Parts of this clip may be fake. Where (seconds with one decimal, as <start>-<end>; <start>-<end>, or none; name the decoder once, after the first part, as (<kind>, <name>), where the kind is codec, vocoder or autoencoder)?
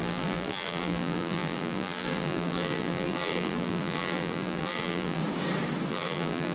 0.0-5.2 (vocoder, BigVGAN v2); 5.9-6.5